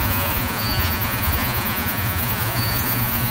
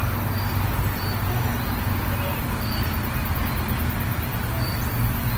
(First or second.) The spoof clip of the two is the first